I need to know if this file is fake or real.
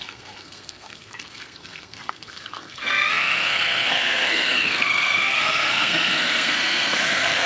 fake